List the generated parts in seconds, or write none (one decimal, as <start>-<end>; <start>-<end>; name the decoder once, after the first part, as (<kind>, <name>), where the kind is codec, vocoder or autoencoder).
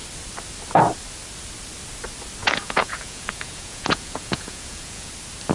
2.4-5.1 (vocoder, Vocos)